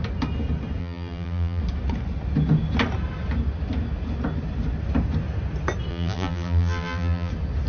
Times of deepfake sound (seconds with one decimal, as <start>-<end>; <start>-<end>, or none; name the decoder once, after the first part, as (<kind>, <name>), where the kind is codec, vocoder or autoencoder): 0.8-1.6 (vocoder, BigVGAN v2); 5.9-7.3